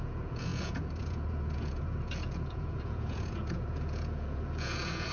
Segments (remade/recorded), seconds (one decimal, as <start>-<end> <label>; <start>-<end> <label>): 0.0-5.1 remade